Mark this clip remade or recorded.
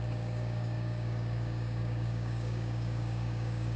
remade